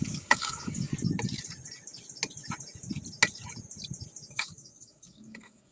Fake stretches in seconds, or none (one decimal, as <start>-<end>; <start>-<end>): 0.0-0.9; 4.3-5.7